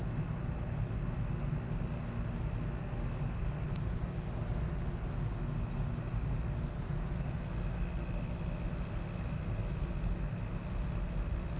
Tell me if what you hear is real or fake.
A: real